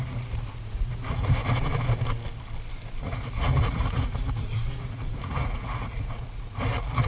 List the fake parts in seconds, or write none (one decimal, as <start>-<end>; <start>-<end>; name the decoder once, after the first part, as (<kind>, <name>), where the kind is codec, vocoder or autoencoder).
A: 0.0-1.4 (vocoder, Vocos); 3.0-7.1